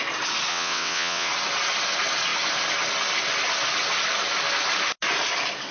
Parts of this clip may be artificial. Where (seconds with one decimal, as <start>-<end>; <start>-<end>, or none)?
0.5-1.3